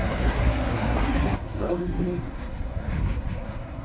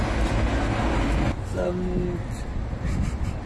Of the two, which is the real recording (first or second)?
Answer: second